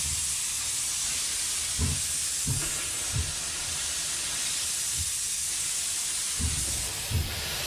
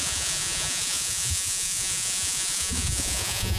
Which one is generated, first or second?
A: second